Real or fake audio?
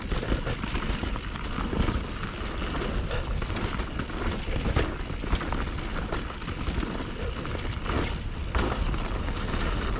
real